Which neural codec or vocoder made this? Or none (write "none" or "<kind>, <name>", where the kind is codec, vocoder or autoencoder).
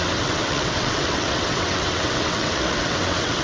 vocoder, WaveNeXt